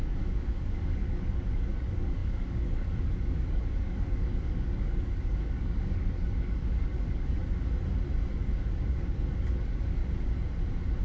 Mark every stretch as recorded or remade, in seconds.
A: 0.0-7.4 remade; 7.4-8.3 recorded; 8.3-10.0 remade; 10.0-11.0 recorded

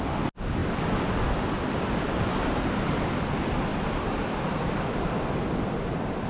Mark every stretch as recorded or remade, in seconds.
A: 0.0-6.3 recorded

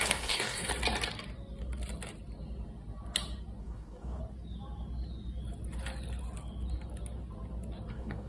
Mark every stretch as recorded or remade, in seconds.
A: 0.0-0.7 remade; 0.7-3.6 recorded; 3.6-4.2 remade; 4.2-7.9 recorded; 7.9-8.3 remade